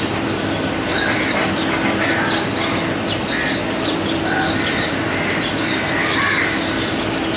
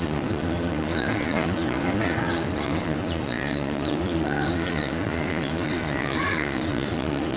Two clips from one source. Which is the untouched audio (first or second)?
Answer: first